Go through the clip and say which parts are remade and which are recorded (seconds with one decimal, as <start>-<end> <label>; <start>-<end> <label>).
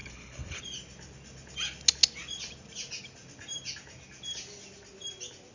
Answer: 0.0-0.6 remade; 0.6-5.5 recorded